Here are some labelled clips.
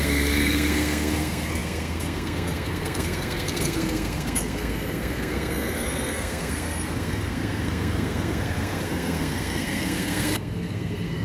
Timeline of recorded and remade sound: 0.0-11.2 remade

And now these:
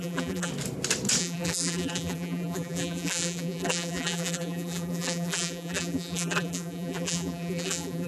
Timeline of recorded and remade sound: 0.0-0.5 remade; 0.5-1.2 recorded; 1.2-8.1 remade

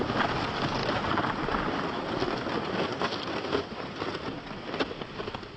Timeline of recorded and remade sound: 0.0-0.8 recorded; 0.8-1.3 remade; 1.3-5.6 recorded

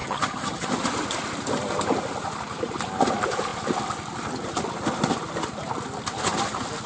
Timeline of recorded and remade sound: 0.0-0.7 remade; 0.7-6.9 recorded